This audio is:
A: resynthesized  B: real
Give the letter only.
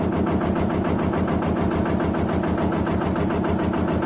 B